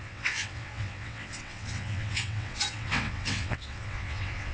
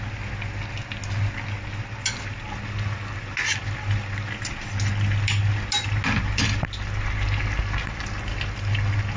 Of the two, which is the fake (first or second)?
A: first